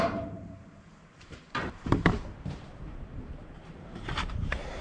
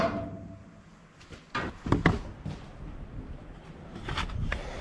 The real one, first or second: second